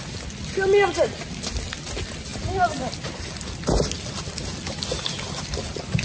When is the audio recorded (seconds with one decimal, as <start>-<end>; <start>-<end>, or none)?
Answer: 0.0-6.0